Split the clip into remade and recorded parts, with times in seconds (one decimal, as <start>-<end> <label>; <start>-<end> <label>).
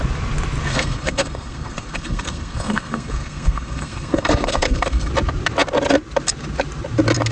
0.0-0.7 recorded; 0.7-5.1 remade; 5.1-7.3 recorded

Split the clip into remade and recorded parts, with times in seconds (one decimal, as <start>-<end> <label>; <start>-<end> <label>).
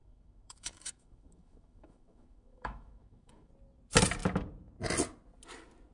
0.0-3.5 remade; 3.5-5.9 recorded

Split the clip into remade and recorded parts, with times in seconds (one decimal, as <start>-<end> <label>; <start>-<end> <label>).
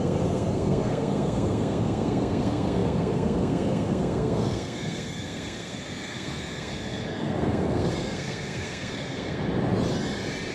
0.0-9.4 remade; 9.4-10.5 recorded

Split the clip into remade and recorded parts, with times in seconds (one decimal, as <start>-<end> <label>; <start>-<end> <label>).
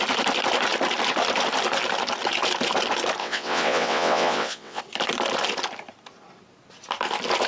0.0-3.2 recorded; 3.2-4.8 remade; 4.8-7.5 recorded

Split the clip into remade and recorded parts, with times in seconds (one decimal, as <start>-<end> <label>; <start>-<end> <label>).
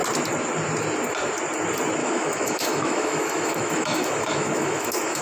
0.0-2.0 recorded; 2.0-5.2 remade